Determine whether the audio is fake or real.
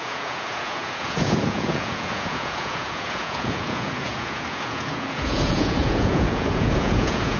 fake